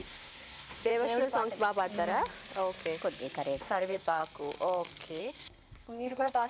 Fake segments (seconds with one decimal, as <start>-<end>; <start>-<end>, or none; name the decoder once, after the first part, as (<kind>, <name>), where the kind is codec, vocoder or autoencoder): 0.0-0.9 (codec, SNAC); 3.6-4.2; 5.2-6.5